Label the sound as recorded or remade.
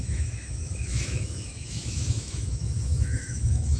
remade